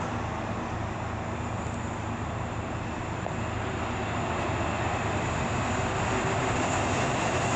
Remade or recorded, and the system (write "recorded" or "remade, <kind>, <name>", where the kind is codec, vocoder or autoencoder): recorded